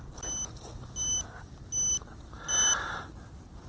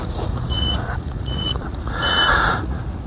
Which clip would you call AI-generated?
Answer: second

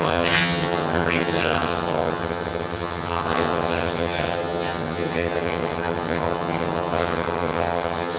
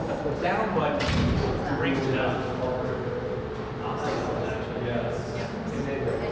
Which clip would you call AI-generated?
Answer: first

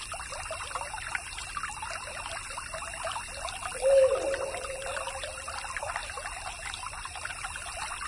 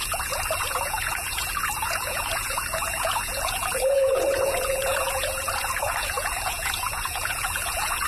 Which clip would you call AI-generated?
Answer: second